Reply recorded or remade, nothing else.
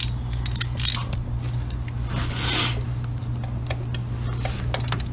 recorded